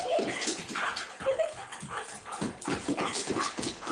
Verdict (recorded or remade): remade